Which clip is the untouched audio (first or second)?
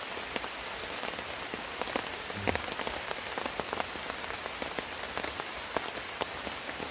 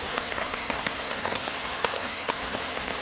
first